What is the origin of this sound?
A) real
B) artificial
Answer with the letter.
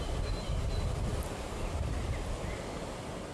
A